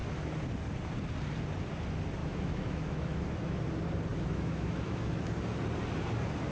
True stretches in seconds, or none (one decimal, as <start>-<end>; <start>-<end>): 0.0-2.2; 3.6-4.1; 5.2-6.5